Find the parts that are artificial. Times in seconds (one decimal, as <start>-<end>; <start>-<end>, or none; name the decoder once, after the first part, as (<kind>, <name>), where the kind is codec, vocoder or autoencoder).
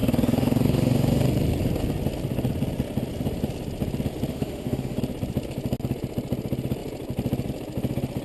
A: 0.0-1.2 (autoencoder, DAC-VAE); 4.3-5.0